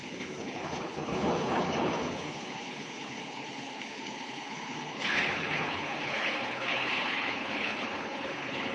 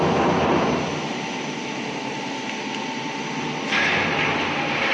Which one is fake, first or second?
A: first